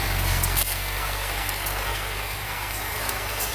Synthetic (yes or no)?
yes